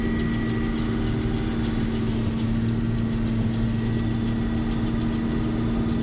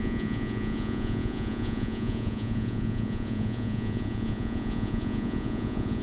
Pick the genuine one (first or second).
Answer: first